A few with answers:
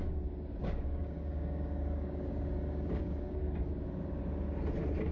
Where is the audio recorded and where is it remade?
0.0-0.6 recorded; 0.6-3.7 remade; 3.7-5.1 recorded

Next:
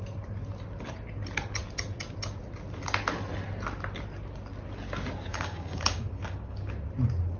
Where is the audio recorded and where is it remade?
0.0-5.3 recorded; 5.3-6.7 remade; 6.7-7.4 recorded

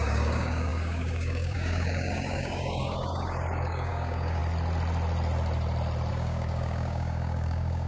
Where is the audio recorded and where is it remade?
0.0-4.4 remade; 4.4-6.1 recorded; 6.1-7.9 remade